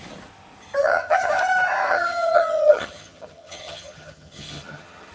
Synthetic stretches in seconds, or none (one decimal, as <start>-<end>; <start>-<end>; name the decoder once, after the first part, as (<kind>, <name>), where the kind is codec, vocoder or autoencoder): 0.8-1.3 (vocoder, HiFi-GAN); 1.9-5.1